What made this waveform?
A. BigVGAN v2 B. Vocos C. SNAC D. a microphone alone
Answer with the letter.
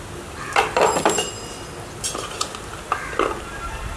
D